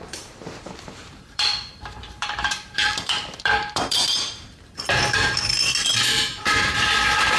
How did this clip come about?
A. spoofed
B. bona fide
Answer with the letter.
A